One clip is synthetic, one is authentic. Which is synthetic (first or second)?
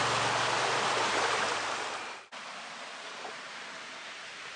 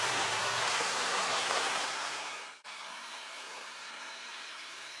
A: second